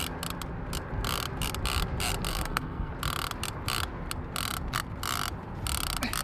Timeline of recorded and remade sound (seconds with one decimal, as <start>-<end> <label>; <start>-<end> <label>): 0.0-2.3 recorded; 2.3-2.9 remade; 2.9-6.2 recorded